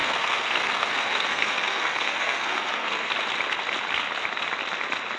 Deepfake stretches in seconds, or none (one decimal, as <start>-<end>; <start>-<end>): 0.0-3.1